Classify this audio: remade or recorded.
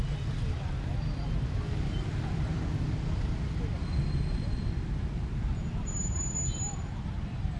recorded